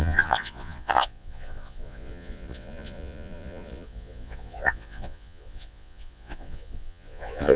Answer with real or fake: fake